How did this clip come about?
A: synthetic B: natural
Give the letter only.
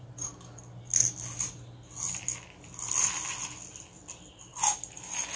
B